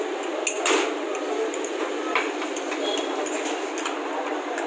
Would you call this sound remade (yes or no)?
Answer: no